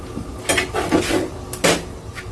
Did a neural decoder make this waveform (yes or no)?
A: no